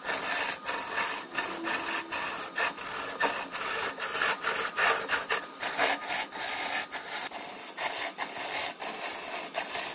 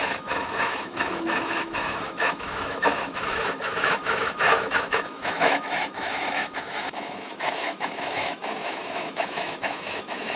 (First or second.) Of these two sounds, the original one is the first